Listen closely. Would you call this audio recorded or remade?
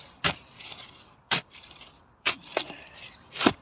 remade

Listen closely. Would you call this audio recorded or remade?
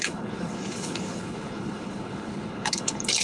remade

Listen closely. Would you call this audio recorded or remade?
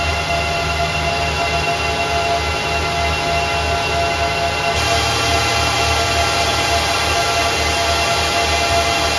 recorded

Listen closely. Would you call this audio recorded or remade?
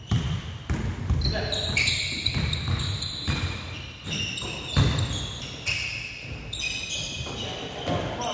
recorded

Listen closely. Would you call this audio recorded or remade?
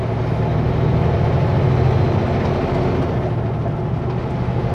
recorded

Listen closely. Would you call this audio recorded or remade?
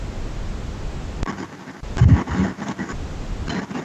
recorded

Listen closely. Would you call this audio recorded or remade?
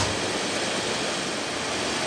recorded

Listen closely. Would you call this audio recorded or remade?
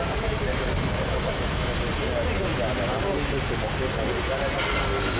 recorded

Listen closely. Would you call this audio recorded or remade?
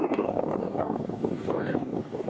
remade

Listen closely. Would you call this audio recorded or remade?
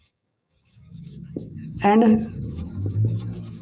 remade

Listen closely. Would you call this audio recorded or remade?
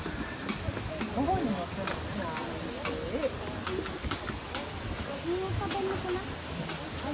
recorded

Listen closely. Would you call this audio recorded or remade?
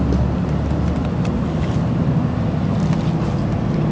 recorded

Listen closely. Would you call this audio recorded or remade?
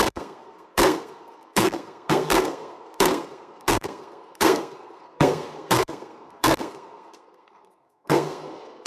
remade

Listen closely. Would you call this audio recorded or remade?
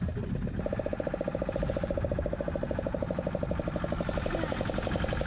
recorded